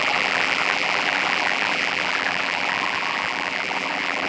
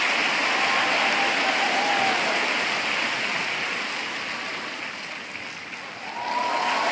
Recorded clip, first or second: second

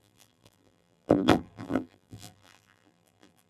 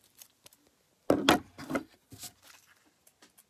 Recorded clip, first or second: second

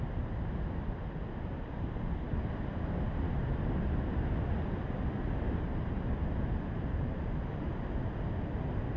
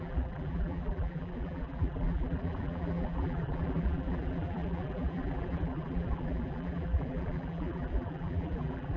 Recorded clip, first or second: first